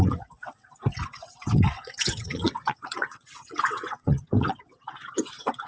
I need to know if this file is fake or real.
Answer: fake